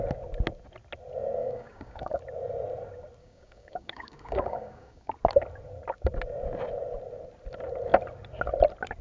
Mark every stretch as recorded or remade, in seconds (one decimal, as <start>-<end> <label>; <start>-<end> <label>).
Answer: 0.0-1.4 recorded; 1.4-2.2 remade; 2.2-3.2 recorded; 3.2-5.1 remade; 5.1-9.0 recorded